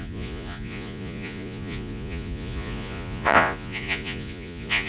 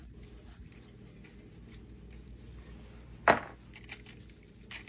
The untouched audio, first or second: second